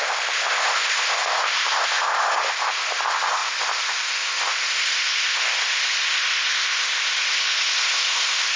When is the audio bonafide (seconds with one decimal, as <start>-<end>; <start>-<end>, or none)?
none